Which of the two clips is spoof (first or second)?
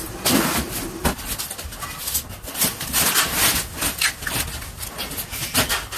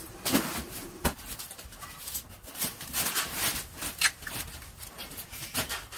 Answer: second